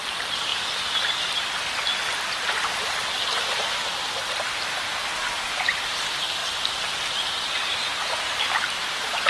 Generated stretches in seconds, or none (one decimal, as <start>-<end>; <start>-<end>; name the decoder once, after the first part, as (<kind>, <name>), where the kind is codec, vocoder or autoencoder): none